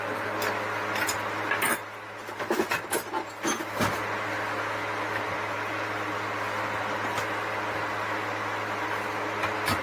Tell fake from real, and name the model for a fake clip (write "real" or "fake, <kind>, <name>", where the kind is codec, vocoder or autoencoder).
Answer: real